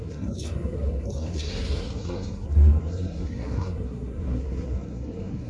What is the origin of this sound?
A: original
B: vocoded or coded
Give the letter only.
B